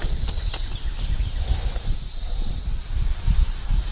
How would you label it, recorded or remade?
recorded